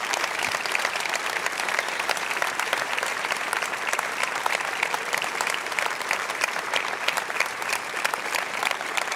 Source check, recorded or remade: remade